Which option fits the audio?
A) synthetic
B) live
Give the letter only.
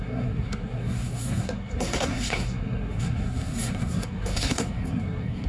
A